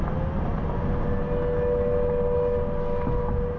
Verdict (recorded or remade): recorded